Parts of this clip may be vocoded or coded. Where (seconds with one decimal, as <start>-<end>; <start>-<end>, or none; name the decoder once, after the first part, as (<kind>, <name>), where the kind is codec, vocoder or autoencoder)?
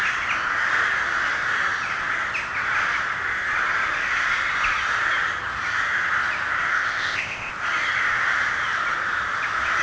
6.7-7.5 (codec, ZipCodec)